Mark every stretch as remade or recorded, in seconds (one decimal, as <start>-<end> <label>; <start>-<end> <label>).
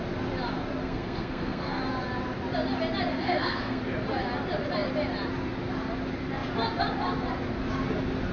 0.0-0.8 recorded; 0.8-1.8 remade; 1.8-3.1 recorded; 3.1-3.8 remade; 3.8-8.3 recorded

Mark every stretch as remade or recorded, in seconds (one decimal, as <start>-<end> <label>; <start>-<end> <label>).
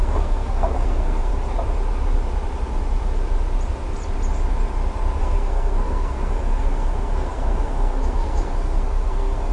0.0-1.3 remade; 1.3-5.2 recorded; 5.2-9.5 remade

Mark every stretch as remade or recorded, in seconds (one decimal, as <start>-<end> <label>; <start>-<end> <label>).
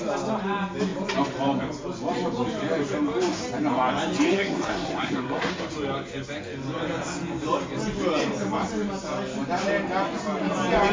0.0-4.3 recorded; 4.3-5.5 remade; 5.5-10.9 recorded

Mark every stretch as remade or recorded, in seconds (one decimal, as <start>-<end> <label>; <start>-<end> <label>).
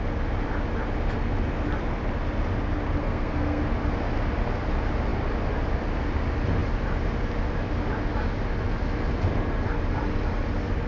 0.0-3.0 recorded; 3.0-3.6 remade; 3.6-10.9 recorded